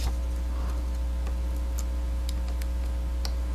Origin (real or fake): real